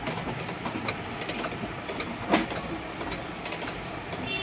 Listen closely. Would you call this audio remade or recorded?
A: recorded